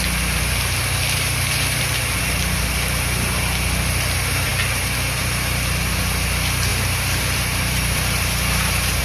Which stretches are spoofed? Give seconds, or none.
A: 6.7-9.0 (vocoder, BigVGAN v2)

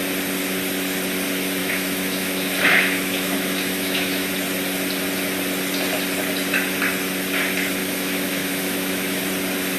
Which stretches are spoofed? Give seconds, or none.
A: 1.6-4.3 (autoencoder, DAC-VAE); 7.8-9.2

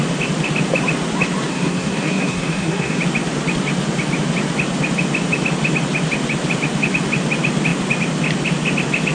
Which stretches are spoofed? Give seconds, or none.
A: 1.5-3.0 (codec, SNAC)

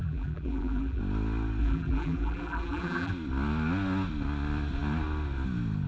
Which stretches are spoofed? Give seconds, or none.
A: 0.0-1.0 (vocoder, BigVGAN v2); 1.6-3.1

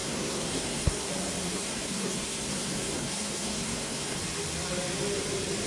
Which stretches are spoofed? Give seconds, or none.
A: 0.0-1.1 (codec, SNAC); 1.6-4.2

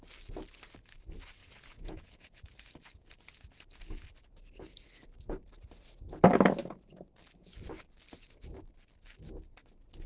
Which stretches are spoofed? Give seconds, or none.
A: 1.4-2.4 (vocoder, Vocos)